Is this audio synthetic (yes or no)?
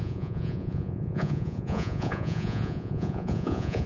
yes